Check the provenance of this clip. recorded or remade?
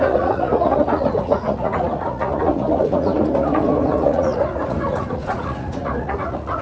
remade